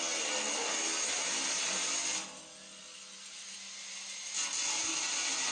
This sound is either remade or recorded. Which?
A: recorded